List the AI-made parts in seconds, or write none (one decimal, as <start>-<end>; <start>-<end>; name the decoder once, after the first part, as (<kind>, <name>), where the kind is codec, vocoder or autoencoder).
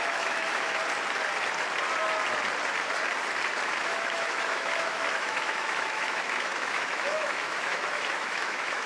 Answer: 0.0-0.8 (autoencoder, DAC-VAE); 3.7-8.9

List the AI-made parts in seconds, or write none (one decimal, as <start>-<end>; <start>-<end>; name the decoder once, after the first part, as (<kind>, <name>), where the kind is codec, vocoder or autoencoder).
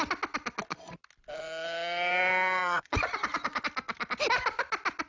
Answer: 2.6-3.6 (vocoder, Vocos)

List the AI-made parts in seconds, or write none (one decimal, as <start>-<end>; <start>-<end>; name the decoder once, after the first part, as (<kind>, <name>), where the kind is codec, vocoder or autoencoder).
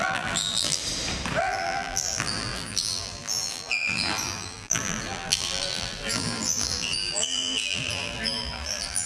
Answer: 0.0-0.8 (vocoder, BigVGAN v2); 1.4-9.1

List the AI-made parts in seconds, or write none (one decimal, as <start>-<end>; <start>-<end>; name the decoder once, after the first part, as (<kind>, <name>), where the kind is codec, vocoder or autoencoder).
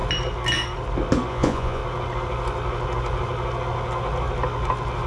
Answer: 1.3-1.8 (vocoder, Vocos)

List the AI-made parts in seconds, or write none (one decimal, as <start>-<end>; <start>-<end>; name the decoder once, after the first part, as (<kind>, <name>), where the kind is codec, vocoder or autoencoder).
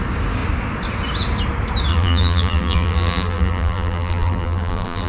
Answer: 1.9-5.1 (vocoder, BigVGAN v2)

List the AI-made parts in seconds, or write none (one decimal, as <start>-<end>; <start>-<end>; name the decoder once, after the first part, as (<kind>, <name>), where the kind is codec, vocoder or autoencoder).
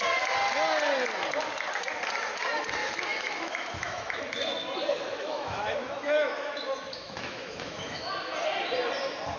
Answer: 2.8-4.2 (autoencoder, DAC-VAE); 4.9-8.1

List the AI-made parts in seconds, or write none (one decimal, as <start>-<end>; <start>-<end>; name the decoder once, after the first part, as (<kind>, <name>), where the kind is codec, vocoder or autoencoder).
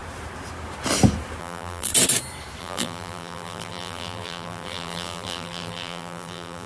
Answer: 1.4-1.9 (vocoder, BigVGAN v2); 2.6-6.7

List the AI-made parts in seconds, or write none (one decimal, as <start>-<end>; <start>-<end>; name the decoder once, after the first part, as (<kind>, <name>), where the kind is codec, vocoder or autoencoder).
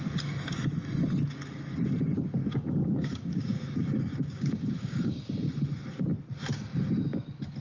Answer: 2.4-5.3 (codec, DAC)